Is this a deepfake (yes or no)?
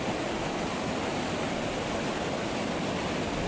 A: no